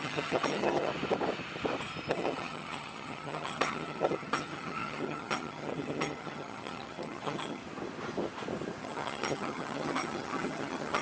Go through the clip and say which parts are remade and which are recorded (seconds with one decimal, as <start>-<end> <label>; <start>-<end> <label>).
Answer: 0.0-0.9 remade; 0.9-2.1 recorded; 2.1-7.6 remade; 7.6-8.8 recorded; 8.8-11.0 remade